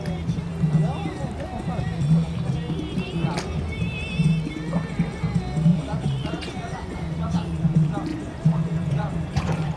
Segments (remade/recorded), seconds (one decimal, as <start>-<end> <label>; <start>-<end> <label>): 0.0-5.7 recorded; 5.7-7.6 remade; 7.6-8.1 recorded; 8.1-9.8 remade